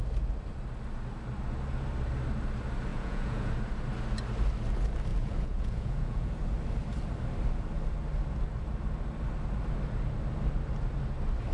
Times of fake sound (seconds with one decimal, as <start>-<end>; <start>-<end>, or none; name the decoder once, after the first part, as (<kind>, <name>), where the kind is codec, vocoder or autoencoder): 2.9-3.5 (vocoder, Vocos); 5.1-6.3